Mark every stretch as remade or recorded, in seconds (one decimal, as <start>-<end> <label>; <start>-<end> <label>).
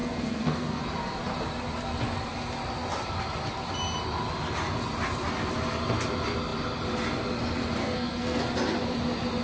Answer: 0.0-0.8 remade; 0.8-7.8 recorded; 7.8-8.4 remade; 8.4-9.4 recorded